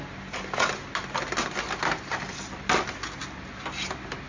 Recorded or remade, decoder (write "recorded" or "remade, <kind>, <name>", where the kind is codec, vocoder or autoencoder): recorded